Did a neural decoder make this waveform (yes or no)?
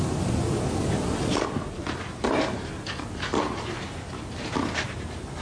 no